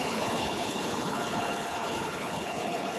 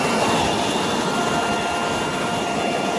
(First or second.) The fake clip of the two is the first